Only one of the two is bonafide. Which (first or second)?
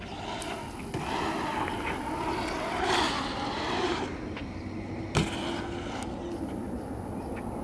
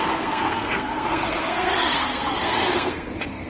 first